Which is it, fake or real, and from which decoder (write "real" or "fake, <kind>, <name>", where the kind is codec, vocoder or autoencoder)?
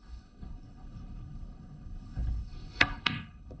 fake, codec, HILCodec